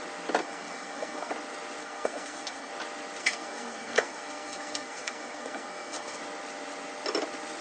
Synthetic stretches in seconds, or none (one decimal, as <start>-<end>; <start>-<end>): 0.4-1.3; 1.8-2.7; 3.2-6.2